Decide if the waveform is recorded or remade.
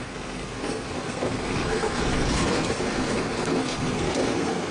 remade